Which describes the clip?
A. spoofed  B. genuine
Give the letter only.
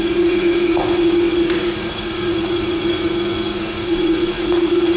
A